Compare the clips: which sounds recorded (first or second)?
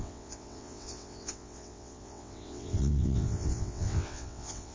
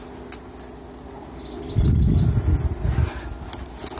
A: second